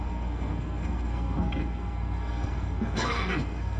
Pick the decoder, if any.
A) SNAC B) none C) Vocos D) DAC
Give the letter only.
A